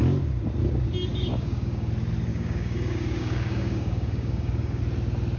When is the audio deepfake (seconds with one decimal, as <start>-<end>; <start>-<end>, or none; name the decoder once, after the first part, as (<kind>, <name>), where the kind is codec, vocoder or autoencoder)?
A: 1.1-1.9 (codec, DAC); 2.3-4.8